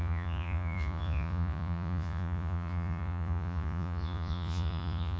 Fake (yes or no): yes